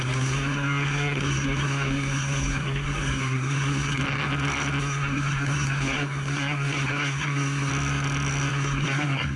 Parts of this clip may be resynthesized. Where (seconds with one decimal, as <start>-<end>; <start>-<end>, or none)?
0.0-4.0; 4.8-7.7; 8.5-9.4